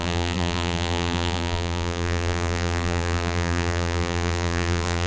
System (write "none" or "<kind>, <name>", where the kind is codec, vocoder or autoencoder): vocoder, BigVGAN v2